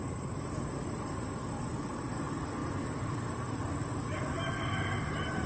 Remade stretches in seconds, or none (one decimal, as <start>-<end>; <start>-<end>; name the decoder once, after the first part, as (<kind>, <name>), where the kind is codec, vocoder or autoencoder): 0.0-1.7 (vocoder, BigVGAN v2); 2.6-3.7